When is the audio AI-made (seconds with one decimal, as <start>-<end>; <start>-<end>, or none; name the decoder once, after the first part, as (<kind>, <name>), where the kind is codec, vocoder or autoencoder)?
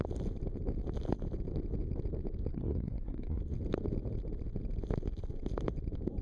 2.5-3.4 (codec, SNAC)